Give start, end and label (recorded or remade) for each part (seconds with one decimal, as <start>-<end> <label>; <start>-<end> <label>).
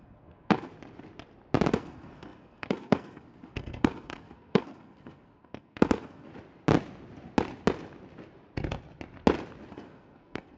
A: 0.0-0.7 remade; 0.7-1.7 recorded; 1.7-6.3 remade; 6.3-9.7 recorded; 9.7-10.6 remade